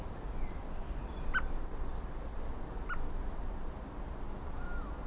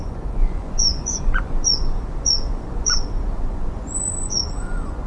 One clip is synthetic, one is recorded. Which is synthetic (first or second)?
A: second